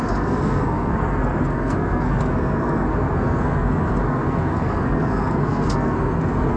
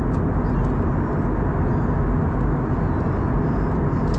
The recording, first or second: second